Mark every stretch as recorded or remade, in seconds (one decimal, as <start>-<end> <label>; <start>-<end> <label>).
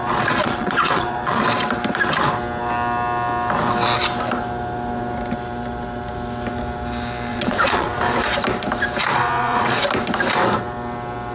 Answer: 0.0-1.4 remade; 1.4-7.3 recorded; 7.3-8.0 remade; 8.0-9.1 recorded; 9.1-9.8 remade; 9.8-11.3 recorded